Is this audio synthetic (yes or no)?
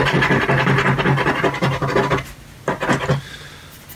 no